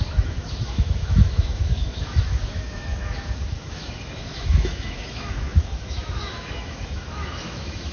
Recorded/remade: remade